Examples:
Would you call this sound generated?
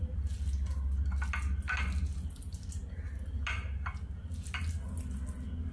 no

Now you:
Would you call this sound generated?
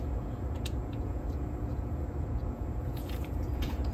yes